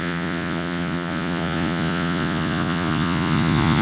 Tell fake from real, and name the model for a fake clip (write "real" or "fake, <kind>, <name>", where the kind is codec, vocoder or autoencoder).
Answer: fake, vocoder, Vocos